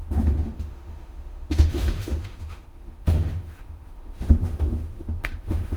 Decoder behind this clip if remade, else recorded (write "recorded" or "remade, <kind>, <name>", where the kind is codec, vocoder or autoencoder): remade, autoencoder, DAC-VAE